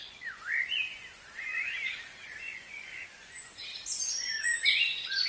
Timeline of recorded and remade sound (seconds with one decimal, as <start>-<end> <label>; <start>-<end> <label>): 0.0-3.6 remade; 3.6-4.2 recorded; 4.2-5.3 remade